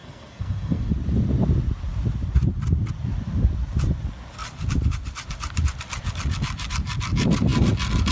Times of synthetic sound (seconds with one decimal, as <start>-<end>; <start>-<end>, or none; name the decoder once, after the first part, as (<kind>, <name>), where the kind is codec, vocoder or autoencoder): 0.0-0.9 (codec, SNAC)

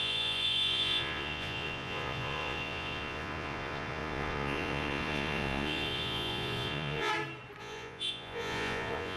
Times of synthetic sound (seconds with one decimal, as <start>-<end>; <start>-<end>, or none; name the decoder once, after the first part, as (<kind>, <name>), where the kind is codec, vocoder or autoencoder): 0.0-7.1 (vocoder, Vocos); 7.6-9.2